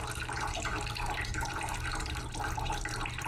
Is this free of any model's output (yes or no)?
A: no